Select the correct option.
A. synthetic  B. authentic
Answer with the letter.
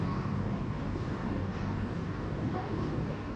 A